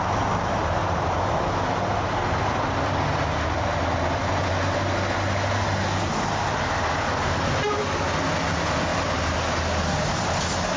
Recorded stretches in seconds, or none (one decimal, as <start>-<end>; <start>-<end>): 0.0-0.5; 1.4-10.8